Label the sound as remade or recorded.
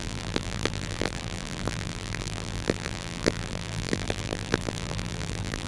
remade